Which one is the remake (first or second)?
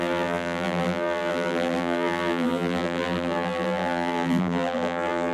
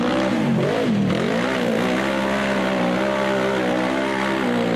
first